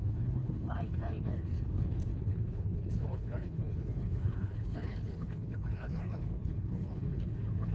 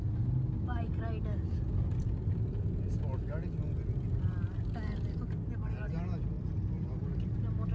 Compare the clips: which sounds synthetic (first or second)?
first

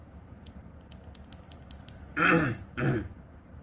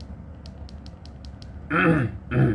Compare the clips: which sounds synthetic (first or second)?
first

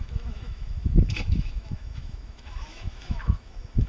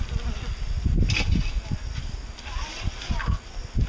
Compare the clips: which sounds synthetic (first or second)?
first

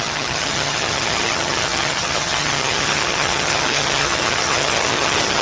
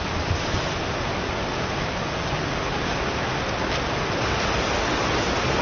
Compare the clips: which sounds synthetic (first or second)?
first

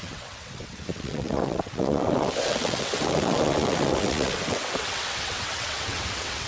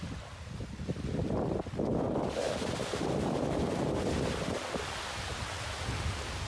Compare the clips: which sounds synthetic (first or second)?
first